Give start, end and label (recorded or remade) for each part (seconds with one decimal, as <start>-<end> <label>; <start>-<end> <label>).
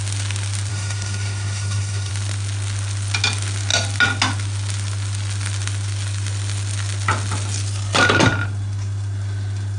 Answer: 0.0-0.7 recorded; 0.7-2.1 remade; 2.1-9.8 recorded